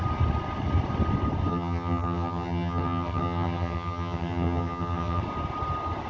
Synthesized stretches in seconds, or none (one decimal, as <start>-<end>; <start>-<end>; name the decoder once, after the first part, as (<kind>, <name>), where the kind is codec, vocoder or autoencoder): 1.5-5.2 (vocoder, HiFi-GAN)